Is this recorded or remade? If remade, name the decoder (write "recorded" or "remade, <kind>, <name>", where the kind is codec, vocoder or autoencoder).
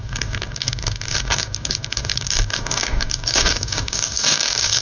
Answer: remade, codec, DAC